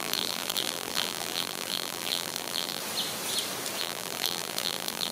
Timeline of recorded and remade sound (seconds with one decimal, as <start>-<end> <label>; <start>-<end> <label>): 0.0-2.8 remade; 2.8-3.8 recorded; 3.8-5.1 remade